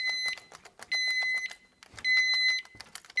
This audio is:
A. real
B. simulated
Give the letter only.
A